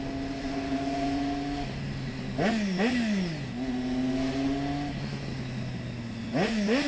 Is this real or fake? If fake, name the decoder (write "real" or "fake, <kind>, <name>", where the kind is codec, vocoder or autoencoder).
real